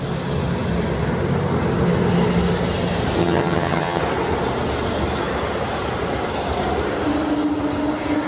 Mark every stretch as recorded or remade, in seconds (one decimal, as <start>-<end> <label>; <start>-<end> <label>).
0.0-3.2 recorded; 3.2-4.0 remade; 4.0-8.3 recorded